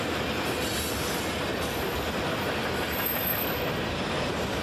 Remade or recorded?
recorded